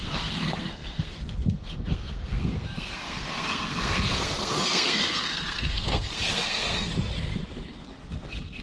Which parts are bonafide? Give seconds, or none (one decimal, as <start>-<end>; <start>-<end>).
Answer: 6.9-7.9